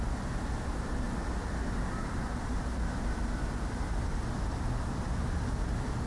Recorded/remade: recorded